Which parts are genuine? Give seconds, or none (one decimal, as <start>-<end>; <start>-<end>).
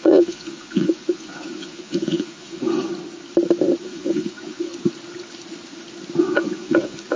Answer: 2.9-3.8; 4.7-6.2